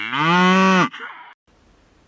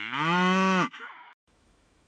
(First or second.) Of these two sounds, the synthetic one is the second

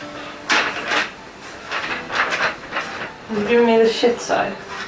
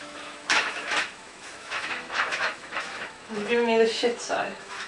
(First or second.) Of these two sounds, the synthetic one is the second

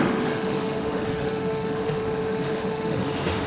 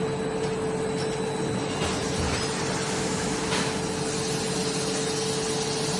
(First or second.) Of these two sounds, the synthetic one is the first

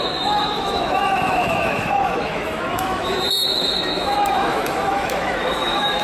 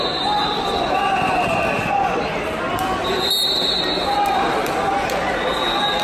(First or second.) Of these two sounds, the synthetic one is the first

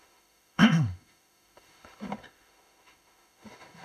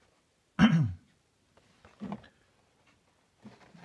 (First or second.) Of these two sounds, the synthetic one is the first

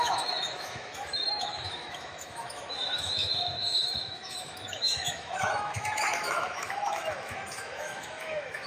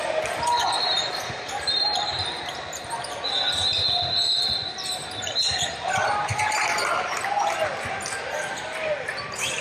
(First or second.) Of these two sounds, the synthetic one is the first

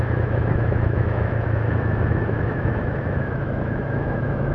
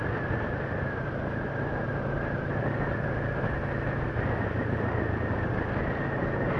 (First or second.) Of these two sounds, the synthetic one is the first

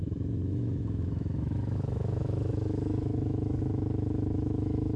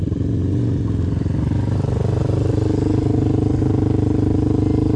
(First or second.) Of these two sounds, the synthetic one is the first